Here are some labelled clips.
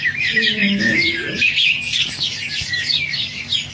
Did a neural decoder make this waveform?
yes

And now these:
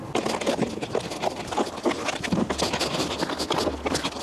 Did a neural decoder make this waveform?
no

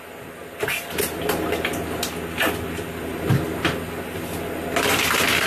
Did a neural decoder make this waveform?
no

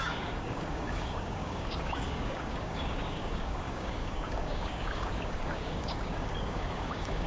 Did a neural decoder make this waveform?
yes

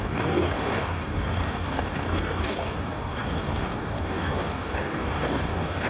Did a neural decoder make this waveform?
yes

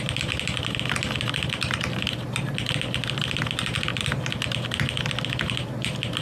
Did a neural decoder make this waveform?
no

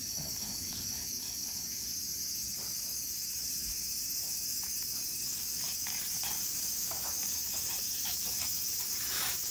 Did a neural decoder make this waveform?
yes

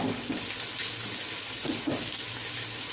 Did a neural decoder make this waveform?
no